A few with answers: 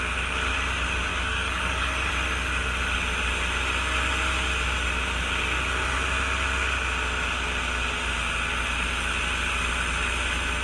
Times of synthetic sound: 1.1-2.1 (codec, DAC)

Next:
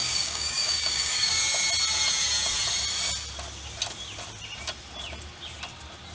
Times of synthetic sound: 0.0-1.4 (codec, DAC)

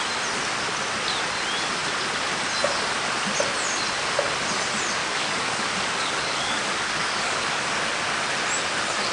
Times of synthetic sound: 5.0-7.8 (codec, DAC)